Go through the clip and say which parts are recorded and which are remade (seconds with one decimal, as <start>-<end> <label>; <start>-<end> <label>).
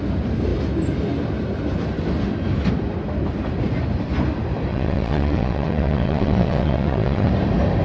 0.0-4.7 recorded; 4.7-7.3 remade; 7.3-7.8 recorded